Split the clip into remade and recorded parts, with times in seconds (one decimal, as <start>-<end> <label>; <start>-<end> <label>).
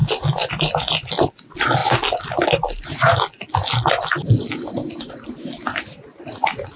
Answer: 0.0-6.8 recorded